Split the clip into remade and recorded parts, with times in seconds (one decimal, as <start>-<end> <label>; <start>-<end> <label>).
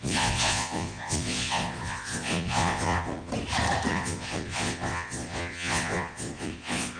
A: 0.0-3.3 remade; 3.3-3.9 recorded; 3.9-7.0 remade